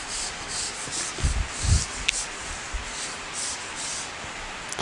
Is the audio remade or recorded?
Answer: recorded